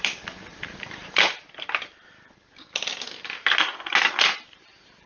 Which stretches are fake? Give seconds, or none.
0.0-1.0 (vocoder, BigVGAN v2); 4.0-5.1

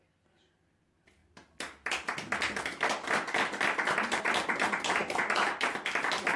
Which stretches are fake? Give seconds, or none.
5.0-5.6 (vocoder, BigVGAN v2)

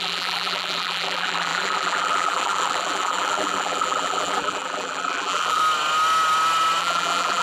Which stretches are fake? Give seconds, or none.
0.0-5.6 (vocoder, BigVGAN v2); 6.8-7.4

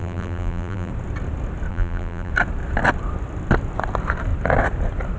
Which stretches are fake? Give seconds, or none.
0.0-0.9 (vocoder, BigVGAN v2); 1.7-2.3

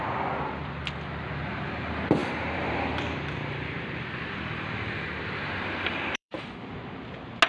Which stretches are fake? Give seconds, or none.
2.2-6.7 (vocoder, BigVGAN v2)

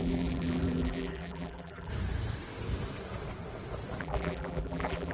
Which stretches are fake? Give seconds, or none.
0.0-1.9 (vocoder, BigVGAN v2); 4.0-5.1

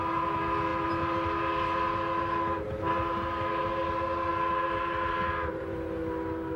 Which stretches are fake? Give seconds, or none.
none

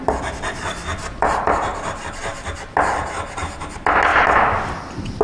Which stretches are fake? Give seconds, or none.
1.7-3.1 (vocoder, BigVGAN v2)